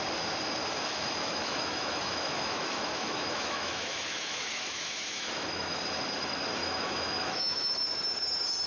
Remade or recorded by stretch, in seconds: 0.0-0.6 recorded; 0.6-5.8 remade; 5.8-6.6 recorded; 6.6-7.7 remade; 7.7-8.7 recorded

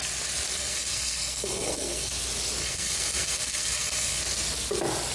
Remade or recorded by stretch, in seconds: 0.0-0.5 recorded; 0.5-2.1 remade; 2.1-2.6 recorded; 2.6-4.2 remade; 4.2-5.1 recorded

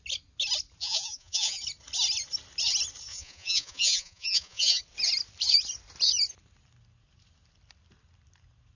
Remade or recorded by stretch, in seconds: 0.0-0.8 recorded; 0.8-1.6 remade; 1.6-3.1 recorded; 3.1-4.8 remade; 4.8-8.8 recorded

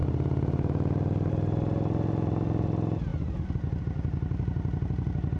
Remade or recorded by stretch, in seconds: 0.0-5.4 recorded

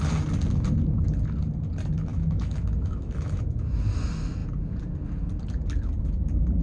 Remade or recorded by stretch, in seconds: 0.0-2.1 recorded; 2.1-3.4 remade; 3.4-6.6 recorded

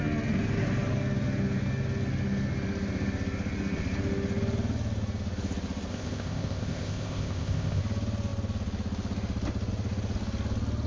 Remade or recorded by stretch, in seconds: 0.0-5.9 recorded; 5.9-7.8 remade; 7.8-10.9 recorded

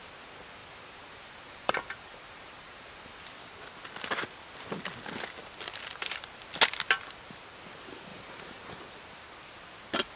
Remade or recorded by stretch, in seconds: 0.0-0.6 recorded; 0.6-3.2 remade; 3.2-8.1 recorded; 8.1-8.7 remade; 8.7-10.2 recorded

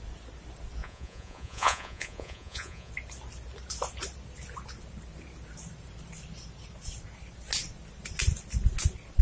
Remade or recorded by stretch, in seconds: 0.0-0.8 recorded; 0.8-2.9 remade; 2.9-9.2 recorded